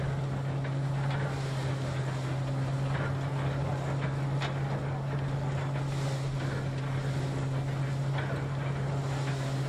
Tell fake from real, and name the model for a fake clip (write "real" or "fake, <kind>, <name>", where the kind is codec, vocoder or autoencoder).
real